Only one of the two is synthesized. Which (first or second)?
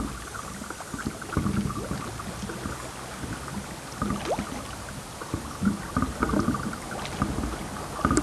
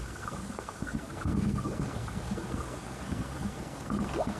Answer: second